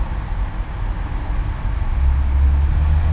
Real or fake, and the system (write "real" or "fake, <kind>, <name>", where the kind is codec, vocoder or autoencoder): real